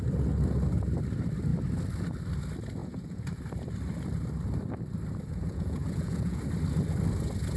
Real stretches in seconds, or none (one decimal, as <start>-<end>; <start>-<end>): 0.0-2.8; 3.4-5.3; 6.4-7.6

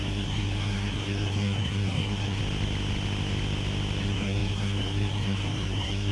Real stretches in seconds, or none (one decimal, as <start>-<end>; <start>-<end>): 2.4-4.0

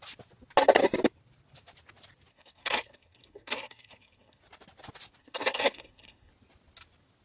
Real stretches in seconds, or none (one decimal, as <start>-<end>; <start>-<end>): 0.0-2.3; 4.4-5.2; 6.3-7.2

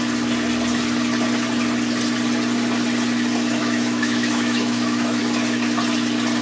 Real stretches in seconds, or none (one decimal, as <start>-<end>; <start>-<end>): 0.0-3.6; 5.2-6.4

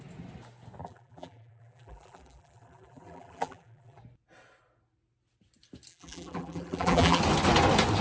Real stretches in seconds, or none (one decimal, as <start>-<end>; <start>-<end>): 0.0-0.8; 4.0-5.9; 7.2-8.0

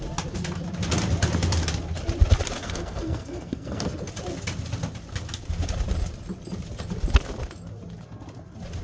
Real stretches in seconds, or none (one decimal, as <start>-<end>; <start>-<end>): 0.0-2.6; 4.1-8.8

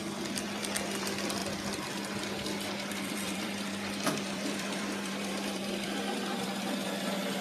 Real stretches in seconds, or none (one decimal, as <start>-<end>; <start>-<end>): 1.4-2.9